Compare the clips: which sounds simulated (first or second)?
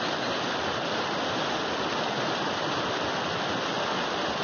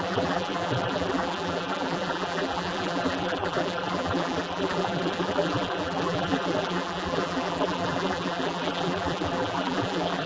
second